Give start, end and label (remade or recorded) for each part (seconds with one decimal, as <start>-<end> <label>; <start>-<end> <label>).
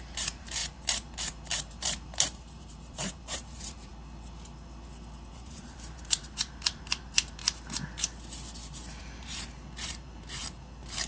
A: 0.0-3.9 remade; 3.9-5.3 recorded; 5.3-7.4 remade; 7.4-9.0 recorded; 9.0-11.1 remade